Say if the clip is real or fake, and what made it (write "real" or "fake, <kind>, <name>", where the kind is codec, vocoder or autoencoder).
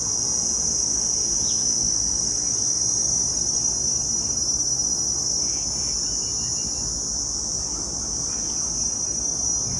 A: real